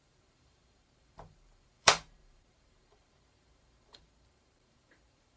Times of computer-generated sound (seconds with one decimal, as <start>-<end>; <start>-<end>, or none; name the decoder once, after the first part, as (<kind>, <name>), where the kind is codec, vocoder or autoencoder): 0.0-5.4 (vocoder, BigVGAN v2)